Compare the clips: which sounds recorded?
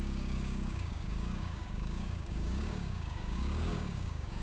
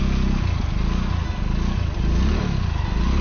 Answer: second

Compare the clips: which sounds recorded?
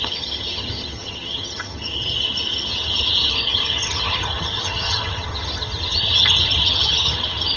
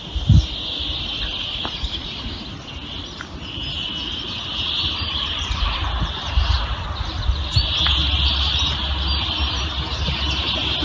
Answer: second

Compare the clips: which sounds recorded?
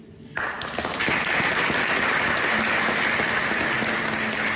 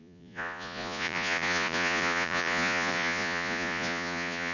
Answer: first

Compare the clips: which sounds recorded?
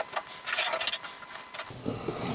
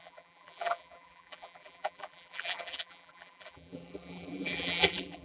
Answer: first